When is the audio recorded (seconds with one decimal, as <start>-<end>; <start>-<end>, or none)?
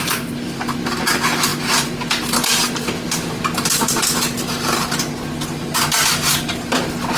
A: 0.0-7.2